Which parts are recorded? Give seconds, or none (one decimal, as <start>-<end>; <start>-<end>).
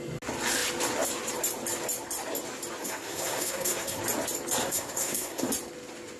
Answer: 0.0-2.8; 4.0-4.6; 5.5-6.2